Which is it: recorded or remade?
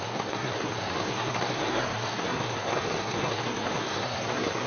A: remade